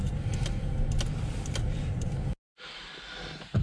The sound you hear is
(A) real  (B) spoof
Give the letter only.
A